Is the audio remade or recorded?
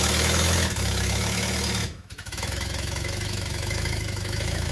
remade